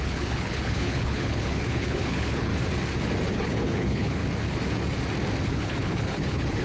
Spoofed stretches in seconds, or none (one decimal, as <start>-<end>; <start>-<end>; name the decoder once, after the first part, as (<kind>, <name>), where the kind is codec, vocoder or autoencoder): 0.0-2.5 (codec, HILCodec); 3.3-4.2; 5.5-6.6